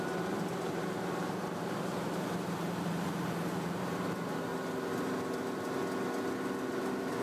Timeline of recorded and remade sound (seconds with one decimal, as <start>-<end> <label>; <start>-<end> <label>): 0.0-4.5 remade; 4.5-7.2 recorded